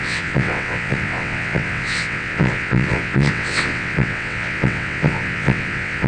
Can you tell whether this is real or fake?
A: fake